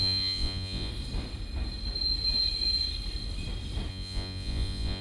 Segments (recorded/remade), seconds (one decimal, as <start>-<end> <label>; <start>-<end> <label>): 0.0-0.9 remade; 0.9-3.9 recorded; 3.9-5.0 remade